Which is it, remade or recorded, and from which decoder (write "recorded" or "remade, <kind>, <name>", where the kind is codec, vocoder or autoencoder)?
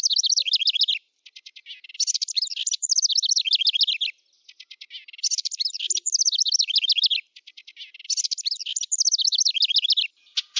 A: recorded